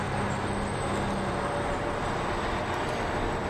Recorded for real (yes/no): yes